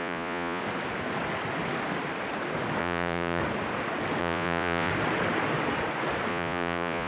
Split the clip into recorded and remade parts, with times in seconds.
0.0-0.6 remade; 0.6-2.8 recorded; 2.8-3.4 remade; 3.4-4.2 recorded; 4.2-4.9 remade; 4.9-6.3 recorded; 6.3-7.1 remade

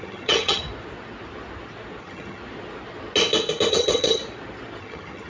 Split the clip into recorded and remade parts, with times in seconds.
0.0-0.6 remade; 0.6-2.0 recorded; 2.0-2.4 remade; 2.4-3.7 recorded; 3.7-4.2 remade; 4.2-4.8 recorded; 4.8-5.3 remade

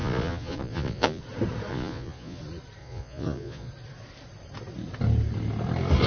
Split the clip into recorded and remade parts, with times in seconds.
0.0-1.2 remade; 1.2-1.7 recorded; 1.7-2.4 remade; 2.4-2.8 recorded; 2.8-3.7 remade; 3.7-6.1 recorded

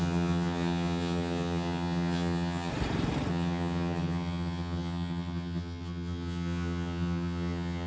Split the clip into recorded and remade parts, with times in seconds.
0.0-2.7 remade; 2.7-3.3 recorded; 3.3-7.9 remade

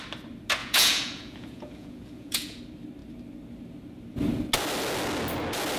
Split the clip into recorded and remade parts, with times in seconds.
0.0-0.6 recorded; 0.6-2.6 remade; 2.6-5.8 recorded

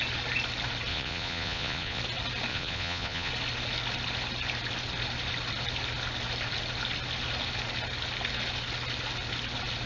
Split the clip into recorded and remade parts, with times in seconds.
0.0-0.9 recorded; 0.9-2.0 remade; 2.0-2.5 recorded; 2.5-3.3 remade; 3.3-9.9 recorded